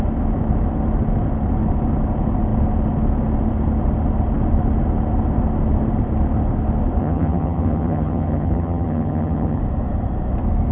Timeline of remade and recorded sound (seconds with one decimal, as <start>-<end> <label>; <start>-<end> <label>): 0.0-7.0 recorded; 7.0-9.6 remade; 9.6-10.7 recorded

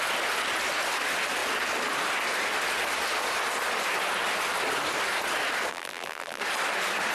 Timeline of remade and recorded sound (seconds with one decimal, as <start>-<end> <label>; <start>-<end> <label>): 0.0-5.7 recorded; 5.7-6.4 remade; 6.4-7.1 recorded

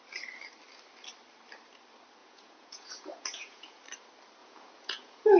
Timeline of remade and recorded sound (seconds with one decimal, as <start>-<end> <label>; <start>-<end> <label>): 0.0-2.2 recorded; 2.2-3.8 remade; 3.8-4.4 recorded; 4.4-5.4 remade

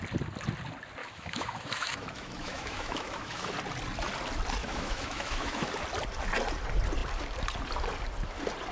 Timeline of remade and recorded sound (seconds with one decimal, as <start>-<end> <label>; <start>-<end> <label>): 0.0-1.0 recorded; 1.0-3.5 remade; 3.5-4.6 recorded; 4.6-5.7 remade; 5.7-8.7 recorded

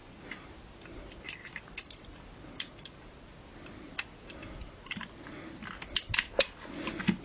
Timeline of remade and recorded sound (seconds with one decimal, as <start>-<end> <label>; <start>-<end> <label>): 0.0-7.2 recorded

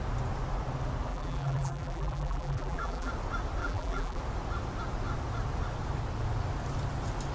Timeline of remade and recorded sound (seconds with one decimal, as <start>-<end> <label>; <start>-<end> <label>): 0.0-1.1 recorded; 1.1-3.1 remade; 3.1-3.6 recorded; 3.6-4.2 remade; 4.2-7.3 recorded

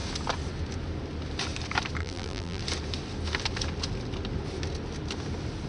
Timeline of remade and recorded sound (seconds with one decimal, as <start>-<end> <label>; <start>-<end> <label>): 0.0-2.0 recorded; 2.0-2.6 remade; 2.6-5.7 recorded

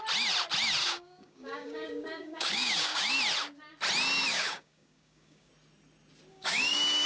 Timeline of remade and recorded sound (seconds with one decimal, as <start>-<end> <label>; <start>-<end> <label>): 0.0-0.8 recorded; 0.8-3.1 remade; 3.1-4.3 recorded; 4.3-5.5 remade; 5.5-6.3 recorded; 6.3-7.1 remade